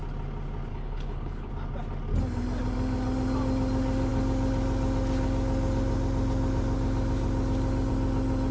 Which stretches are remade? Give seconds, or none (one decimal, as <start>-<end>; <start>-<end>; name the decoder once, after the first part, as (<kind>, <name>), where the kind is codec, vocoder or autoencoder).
0.7-1.5 (codec, HILCodec)